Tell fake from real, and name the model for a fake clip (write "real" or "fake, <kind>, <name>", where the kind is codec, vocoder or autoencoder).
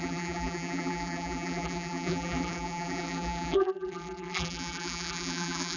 fake, vocoder, BigVGAN v2